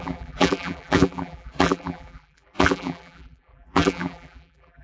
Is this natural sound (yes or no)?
no